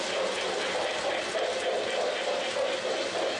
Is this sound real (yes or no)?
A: yes